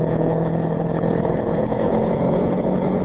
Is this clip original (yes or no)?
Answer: no